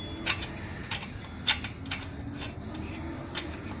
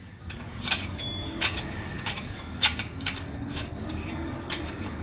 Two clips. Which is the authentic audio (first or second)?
first